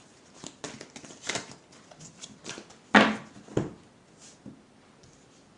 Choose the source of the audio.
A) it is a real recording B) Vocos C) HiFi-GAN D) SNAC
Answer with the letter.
A